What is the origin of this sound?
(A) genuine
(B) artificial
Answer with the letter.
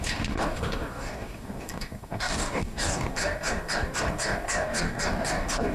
B